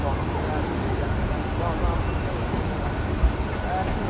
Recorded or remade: recorded